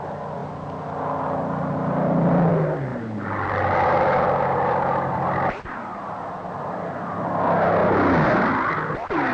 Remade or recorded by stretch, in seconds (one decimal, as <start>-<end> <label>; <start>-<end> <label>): 0.0-0.4 recorded; 0.4-2.5 remade; 2.5-2.9 recorded; 2.9-7.2 remade; 7.2-9.3 recorded